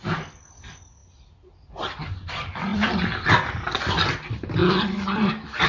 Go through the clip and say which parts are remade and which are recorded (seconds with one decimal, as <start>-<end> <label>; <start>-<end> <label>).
0.0-5.7 recorded

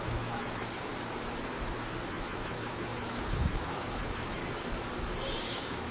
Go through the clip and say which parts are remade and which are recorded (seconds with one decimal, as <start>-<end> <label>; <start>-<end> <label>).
0.0-0.9 remade; 0.9-2.1 recorded; 2.1-4.4 remade; 4.4-5.4 recorded; 5.4-5.9 remade

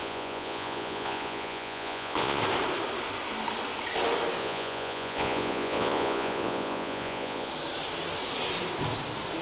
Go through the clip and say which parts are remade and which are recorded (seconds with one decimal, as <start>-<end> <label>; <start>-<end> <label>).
0.0-2.4 remade; 2.4-4.4 recorded; 4.4-7.5 remade; 7.5-9.4 recorded

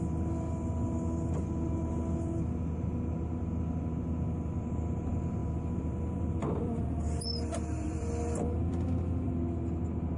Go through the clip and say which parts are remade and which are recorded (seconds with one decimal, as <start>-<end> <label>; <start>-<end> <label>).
0.0-5.4 recorded; 5.4-9.3 remade; 9.3-10.2 recorded

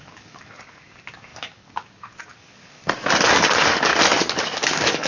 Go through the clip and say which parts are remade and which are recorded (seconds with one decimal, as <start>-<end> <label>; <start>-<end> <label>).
0.0-2.8 remade; 2.8-3.4 recorded; 3.4-3.9 remade; 3.9-4.4 recorded; 4.4-5.1 remade

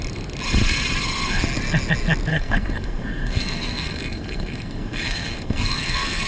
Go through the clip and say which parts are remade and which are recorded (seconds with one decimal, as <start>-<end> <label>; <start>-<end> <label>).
0.0-2.3 recorded; 2.3-6.3 remade

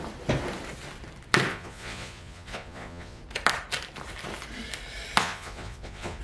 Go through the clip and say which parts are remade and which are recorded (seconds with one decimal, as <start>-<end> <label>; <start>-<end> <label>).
0.0-1.5 recorded; 1.5-3.2 remade; 3.2-5.2 recorded; 5.2-6.2 remade